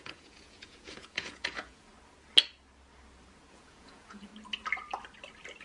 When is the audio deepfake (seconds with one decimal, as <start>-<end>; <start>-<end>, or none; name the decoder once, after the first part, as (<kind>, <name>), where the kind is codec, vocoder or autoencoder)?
0.0-1.9 (vocoder, Vocos); 3.5-4.3